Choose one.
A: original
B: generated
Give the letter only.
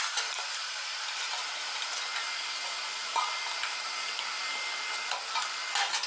A